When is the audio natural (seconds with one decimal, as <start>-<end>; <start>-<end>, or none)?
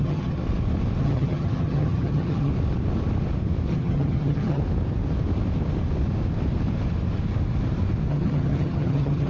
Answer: 0.4-1.0; 2.5-3.7; 4.6-8.1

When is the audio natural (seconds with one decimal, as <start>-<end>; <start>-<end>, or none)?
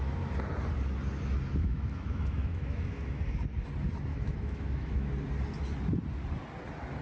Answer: 0.0-1.6; 3.2-4.1; 5.1-7.0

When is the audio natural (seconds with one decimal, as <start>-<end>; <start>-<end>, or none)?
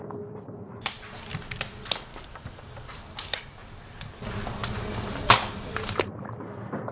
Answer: 0.0-2.1; 2.6-6.9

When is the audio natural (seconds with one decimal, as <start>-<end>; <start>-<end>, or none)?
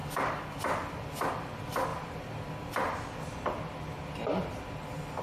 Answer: 0.6-5.2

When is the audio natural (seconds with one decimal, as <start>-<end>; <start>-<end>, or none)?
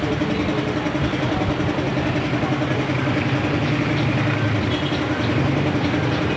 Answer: 0.0-6.4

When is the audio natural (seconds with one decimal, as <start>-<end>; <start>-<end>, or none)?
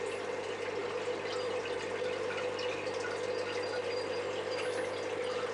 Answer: 0.0-5.5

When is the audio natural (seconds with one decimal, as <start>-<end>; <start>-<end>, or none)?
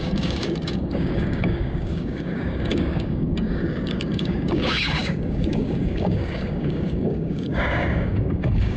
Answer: none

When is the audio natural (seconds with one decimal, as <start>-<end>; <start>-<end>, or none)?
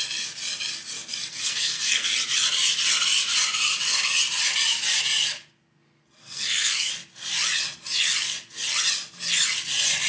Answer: 0.0-1.3; 2.1-6.2; 6.9-10.1